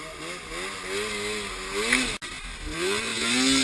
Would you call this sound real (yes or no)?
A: yes